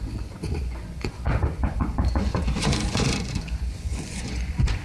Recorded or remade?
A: remade